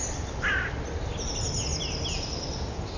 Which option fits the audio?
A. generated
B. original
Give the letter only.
B